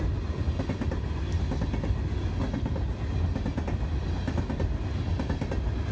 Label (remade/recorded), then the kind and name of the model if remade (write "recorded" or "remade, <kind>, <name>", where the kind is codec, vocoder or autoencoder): recorded